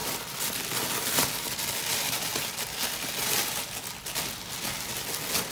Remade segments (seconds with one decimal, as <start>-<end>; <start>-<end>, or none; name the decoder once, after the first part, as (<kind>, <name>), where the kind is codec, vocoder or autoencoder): 0.0-1.1 (vocoder, BigVGAN v2)